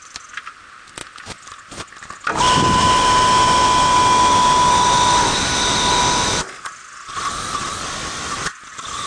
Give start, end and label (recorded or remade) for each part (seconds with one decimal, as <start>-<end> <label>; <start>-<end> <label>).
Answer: 0.0-9.1 recorded